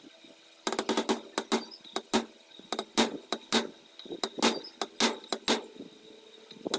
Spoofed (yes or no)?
no